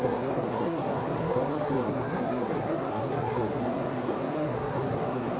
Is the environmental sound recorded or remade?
remade